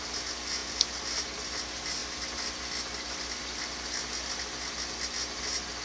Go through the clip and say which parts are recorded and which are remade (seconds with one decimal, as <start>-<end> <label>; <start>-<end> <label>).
0.0-5.8 recorded